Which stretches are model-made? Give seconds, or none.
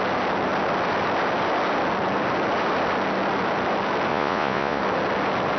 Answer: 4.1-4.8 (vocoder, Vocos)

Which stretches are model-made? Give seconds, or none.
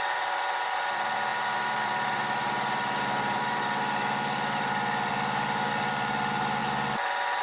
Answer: 0.0-6.6 (vocoder, BigVGAN v2)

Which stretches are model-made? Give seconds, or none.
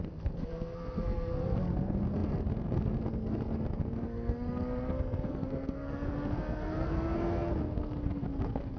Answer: 0.0-8.8 (codec, SNAC)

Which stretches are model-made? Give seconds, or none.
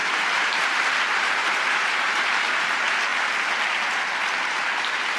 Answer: 0.0-2.6 (vocoder, BigVGAN v2); 4.2-5.2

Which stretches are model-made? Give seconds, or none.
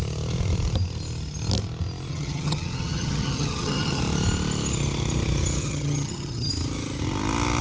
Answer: 2.1-4.0 (vocoder, HiFi-GAN); 5.6-6.5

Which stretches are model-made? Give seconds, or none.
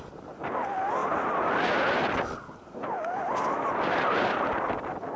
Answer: none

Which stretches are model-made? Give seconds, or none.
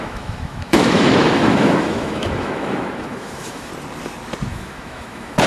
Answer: 0.0-3.7 (autoencoder, DAC-VAE); 4.5-5.5